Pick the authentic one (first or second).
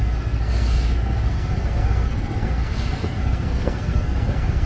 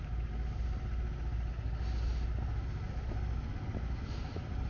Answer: second